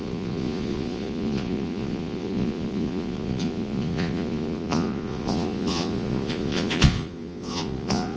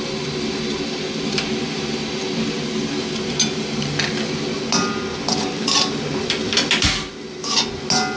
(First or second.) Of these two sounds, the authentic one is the second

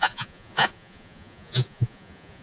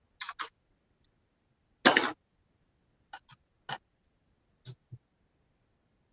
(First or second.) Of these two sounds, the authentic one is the second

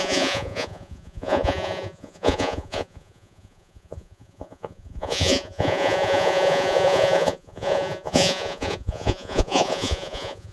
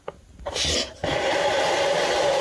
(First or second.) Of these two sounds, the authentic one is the second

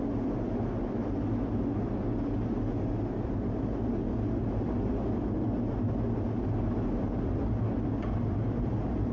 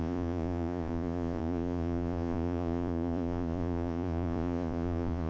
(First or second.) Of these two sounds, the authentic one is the first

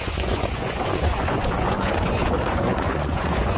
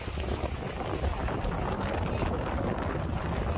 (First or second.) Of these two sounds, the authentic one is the second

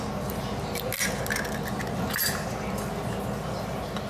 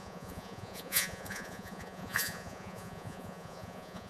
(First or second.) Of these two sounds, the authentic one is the first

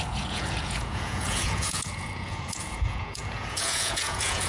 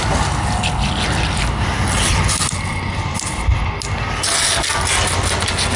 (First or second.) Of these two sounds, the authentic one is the second